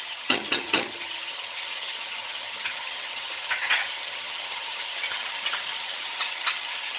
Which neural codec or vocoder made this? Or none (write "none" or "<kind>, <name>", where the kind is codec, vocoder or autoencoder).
vocoder, HiFi-GAN